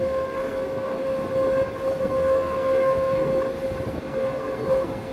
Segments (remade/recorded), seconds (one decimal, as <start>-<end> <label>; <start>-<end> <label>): 0.0-1.0 remade; 1.0-2.0 recorded; 2.0-3.3 remade; 3.3-3.9 recorded; 3.9-5.1 remade